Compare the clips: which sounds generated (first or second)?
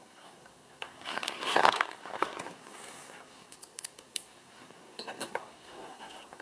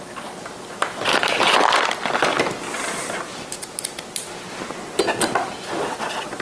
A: first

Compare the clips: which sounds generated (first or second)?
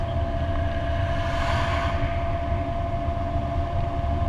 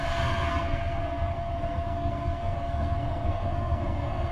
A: second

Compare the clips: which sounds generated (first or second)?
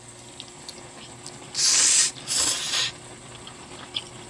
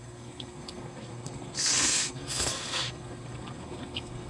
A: second